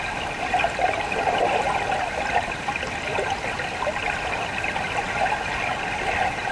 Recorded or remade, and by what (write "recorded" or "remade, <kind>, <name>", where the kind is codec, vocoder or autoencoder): recorded